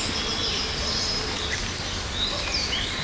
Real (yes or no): yes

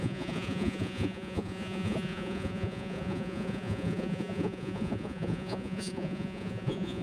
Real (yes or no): no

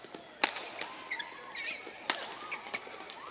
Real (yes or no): yes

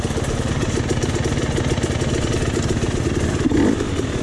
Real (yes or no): yes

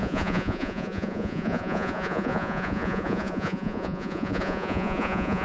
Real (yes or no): no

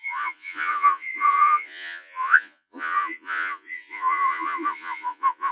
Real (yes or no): no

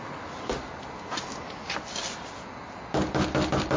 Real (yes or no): yes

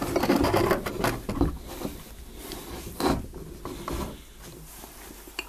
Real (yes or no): yes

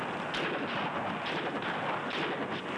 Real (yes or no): yes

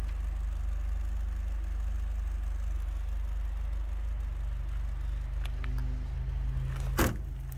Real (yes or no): yes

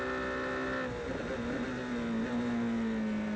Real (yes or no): yes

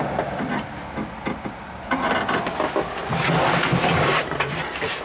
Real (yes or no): yes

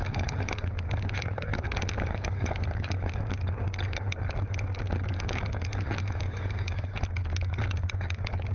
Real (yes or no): no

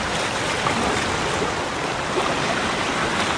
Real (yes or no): yes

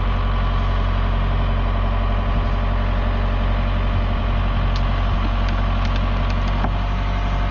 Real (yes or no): yes